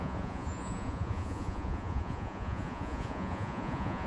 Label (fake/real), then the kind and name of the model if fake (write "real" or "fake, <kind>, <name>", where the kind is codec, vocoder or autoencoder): fake, vocoder, Vocos